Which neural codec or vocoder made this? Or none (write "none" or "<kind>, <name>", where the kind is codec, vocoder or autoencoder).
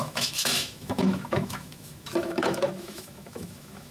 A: autoencoder, DAC-VAE